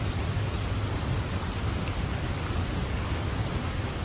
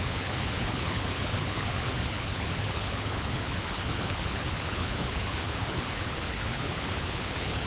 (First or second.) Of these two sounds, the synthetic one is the second